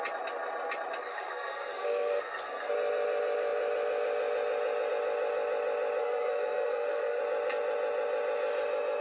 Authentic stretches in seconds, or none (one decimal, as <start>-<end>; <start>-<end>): 0.0-1.1; 2.7-6.0; 7.2-9.0